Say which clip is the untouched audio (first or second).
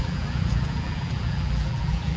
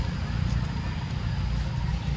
second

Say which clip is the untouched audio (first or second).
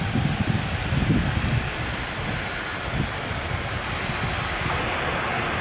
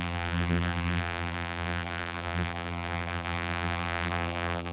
first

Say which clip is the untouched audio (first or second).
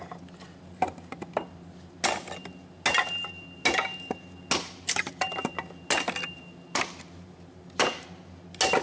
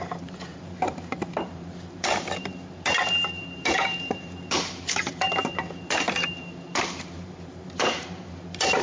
first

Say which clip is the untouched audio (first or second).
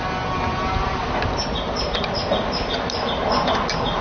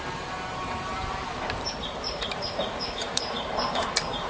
first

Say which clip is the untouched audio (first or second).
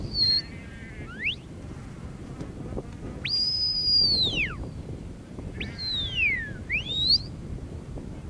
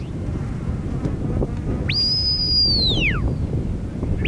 second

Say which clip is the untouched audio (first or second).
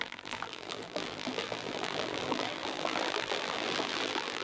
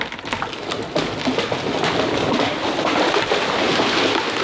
second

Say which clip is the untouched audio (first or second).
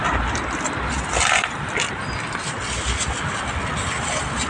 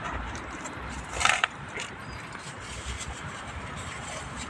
first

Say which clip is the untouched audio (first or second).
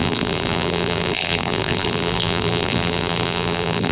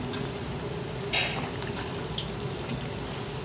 second